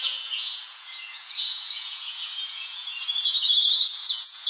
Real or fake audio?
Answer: fake